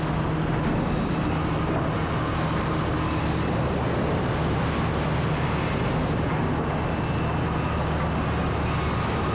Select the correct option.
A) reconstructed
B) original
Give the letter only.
B